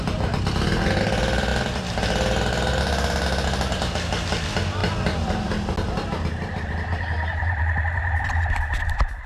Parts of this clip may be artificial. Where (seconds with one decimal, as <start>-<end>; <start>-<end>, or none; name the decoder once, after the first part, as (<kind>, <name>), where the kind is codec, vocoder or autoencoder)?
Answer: none